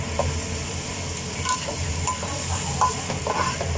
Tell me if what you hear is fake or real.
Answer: real